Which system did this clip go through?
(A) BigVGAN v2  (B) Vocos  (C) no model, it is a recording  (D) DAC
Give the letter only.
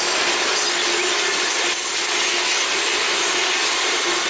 C